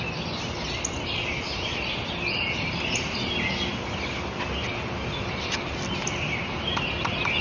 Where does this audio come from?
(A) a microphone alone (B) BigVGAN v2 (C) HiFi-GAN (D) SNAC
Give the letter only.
A